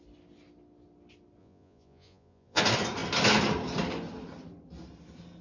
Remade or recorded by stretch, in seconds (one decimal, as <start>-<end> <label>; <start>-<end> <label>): 0.0-1.4 recorded; 1.4-2.6 remade; 2.6-5.4 recorded